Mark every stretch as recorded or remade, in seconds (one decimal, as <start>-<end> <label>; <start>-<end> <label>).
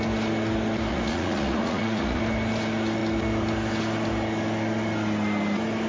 0.0-0.9 recorded; 0.9-2.2 remade; 2.2-5.9 recorded